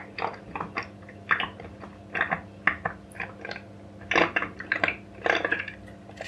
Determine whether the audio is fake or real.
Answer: real